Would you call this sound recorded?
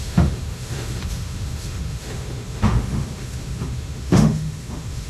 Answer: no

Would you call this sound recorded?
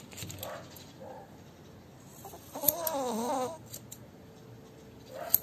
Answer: yes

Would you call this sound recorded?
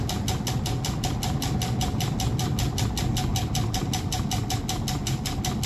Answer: yes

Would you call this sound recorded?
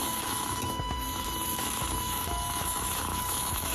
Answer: no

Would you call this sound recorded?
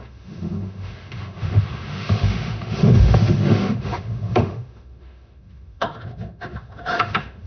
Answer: no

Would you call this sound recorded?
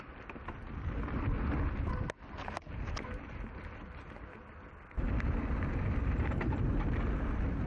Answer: yes